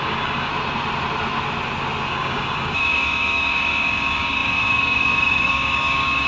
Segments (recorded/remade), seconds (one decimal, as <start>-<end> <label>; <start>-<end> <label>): 0.0-0.5 remade; 0.5-2.1 recorded; 2.1-6.3 remade